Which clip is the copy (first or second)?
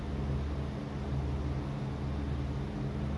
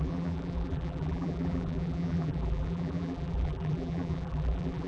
second